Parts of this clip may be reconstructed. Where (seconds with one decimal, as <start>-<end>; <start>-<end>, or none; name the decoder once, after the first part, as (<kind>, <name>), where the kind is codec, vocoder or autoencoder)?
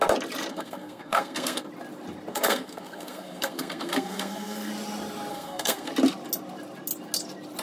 0.5-1.7 (codec, SNAC); 2.3-4.7; 5.3-5.9